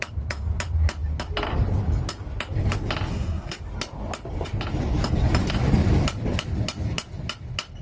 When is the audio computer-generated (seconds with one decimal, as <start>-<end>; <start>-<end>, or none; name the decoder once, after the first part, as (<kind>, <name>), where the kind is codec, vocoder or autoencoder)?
3.1-3.6 (codec, SNAC)